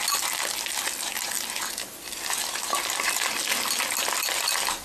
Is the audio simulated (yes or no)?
no